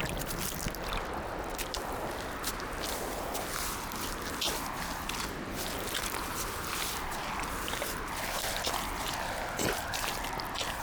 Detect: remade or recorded recorded